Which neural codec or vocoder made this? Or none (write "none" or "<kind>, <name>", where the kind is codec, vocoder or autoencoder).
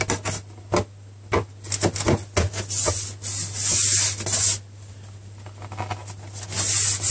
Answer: none